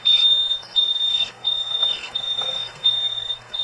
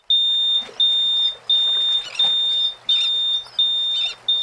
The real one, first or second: second